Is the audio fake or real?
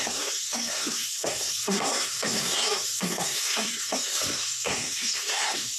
fake